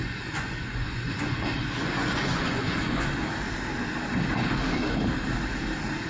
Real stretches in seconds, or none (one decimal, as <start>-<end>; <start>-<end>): 3.1-6.1